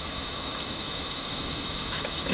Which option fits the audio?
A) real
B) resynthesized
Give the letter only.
B